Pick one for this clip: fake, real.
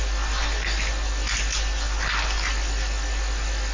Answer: real